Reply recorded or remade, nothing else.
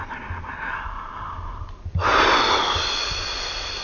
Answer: recorded